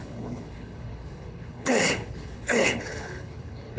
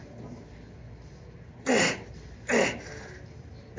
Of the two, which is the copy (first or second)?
first